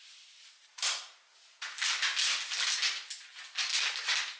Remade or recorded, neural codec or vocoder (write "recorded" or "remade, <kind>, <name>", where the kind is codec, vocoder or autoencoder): recorded